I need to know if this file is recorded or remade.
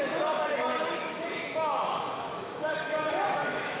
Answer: remade